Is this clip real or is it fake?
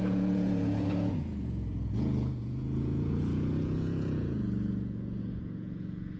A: fake